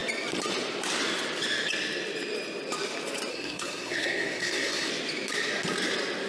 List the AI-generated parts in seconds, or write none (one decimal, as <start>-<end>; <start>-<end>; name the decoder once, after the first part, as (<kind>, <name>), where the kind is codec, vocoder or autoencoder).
3.3-4.9 (codec, SNAC)